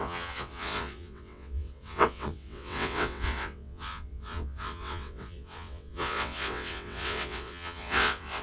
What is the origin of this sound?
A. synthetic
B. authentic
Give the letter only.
A